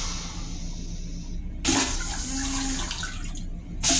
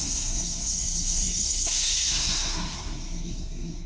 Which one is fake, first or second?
second